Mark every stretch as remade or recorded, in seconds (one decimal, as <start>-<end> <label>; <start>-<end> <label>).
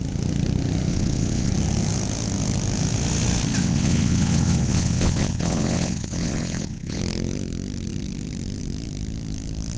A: 0.0-0.9 recorded; 0.9-1.5 remade; 1.5-3.6 recorded; 3.6-7.0 remade; 7.0-9.8 recorded